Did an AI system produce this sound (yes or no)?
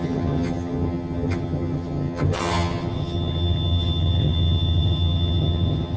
yes